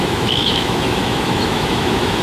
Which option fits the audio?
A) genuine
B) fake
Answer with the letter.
B